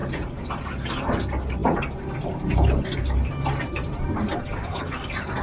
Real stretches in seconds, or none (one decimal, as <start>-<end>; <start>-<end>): 1.1-1.6; 4.8-5.4